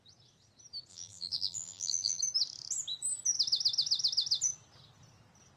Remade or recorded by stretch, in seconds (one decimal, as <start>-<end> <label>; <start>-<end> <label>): 0.0-0.9 recorded; 0.9-2.2 remade; 2.2-5.6 recorded

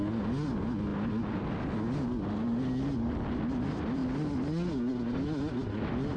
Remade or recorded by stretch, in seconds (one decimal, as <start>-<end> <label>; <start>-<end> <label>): 0.0-6.2 recorded